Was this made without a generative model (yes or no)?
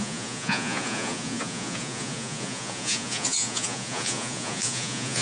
no